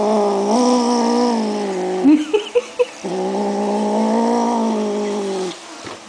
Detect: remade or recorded recorded